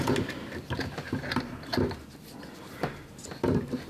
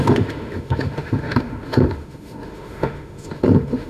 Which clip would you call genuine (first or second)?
first